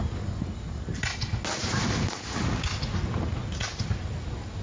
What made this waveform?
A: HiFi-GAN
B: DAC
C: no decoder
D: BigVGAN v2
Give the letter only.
C